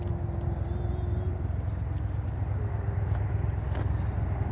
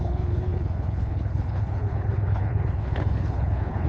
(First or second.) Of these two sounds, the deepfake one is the second